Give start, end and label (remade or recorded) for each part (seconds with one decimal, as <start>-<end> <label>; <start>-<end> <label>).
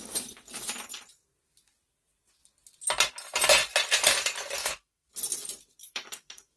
0.0-4.6 recorded; 4.6-5.1 remade; 5.1-5.8 recorded; 5.8-6.6 remade